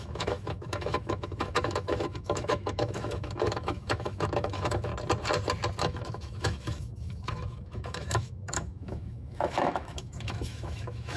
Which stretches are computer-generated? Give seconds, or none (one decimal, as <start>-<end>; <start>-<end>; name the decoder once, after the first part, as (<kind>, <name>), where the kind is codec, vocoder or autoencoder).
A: 0.0-4.9 (autoencoder, DAC-VAE); 5.8-11.2